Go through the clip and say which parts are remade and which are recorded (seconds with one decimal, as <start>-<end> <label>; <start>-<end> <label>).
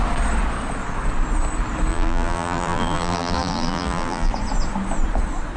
0.0-1.9 recorded; 1.9-4.3 remade; 4.3-5.6 recorded